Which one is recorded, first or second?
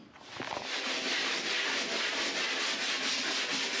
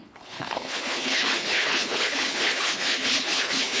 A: first